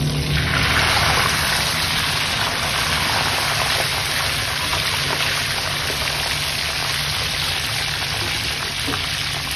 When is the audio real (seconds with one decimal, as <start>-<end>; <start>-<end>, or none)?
0.0-4.7; 5.7-6.8; 7.8-9.6